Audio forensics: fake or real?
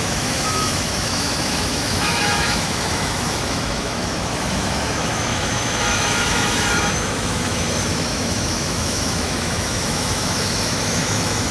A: fake